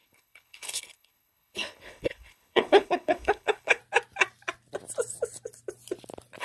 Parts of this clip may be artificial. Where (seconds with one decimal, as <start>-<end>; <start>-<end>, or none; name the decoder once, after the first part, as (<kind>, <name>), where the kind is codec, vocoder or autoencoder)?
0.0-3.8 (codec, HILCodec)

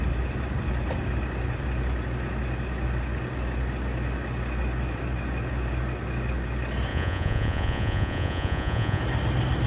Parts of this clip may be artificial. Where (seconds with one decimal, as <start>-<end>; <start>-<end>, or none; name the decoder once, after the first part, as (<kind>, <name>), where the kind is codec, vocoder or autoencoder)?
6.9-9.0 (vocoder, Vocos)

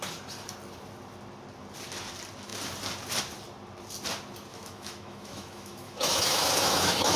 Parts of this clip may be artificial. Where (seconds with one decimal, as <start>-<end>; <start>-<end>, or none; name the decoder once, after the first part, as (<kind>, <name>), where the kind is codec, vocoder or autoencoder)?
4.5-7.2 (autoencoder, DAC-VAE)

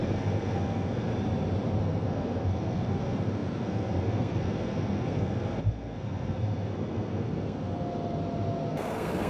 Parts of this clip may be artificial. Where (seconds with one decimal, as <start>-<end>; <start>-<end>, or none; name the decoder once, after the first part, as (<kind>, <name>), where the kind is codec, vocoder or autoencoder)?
0.0-1.1 (codec, SNAC); 1.8-8.2; 8.7-9.3